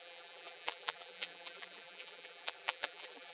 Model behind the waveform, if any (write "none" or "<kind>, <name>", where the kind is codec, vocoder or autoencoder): vocoder, BigVGAN v2